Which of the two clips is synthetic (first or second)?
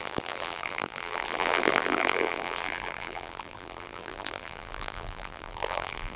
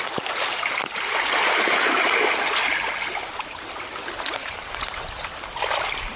first